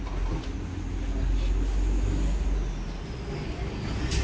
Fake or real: real